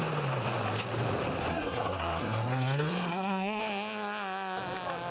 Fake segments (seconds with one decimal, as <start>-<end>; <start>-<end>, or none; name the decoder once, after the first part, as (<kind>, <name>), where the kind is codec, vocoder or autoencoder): 1.5-3.6 (codec, SNAC)

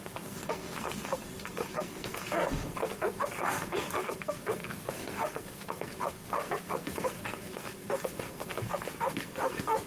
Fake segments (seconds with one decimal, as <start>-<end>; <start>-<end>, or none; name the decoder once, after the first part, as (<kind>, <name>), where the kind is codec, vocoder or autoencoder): 0.0-9.9 (codec, SNAC)